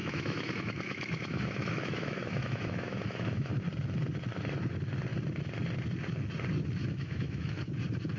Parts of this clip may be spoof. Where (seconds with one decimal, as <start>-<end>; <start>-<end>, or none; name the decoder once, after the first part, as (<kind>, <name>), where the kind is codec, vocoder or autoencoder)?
0.0-3.5 (autoencoder, DAC-VAE); 6.8-7.7